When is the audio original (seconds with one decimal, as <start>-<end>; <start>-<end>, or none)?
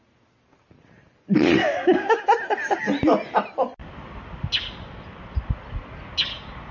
0.0-1.6; 2.2-6.7